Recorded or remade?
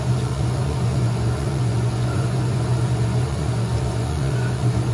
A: remade